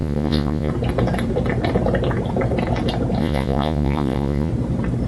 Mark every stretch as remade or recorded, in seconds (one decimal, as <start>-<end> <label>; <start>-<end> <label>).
0.0-0.7 remade; 0.7-3.2 recorded; 3.2-4.5 remade; 4.5-5.1 recorded